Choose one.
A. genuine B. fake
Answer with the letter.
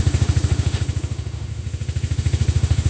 B